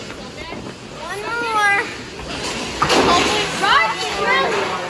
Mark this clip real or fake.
real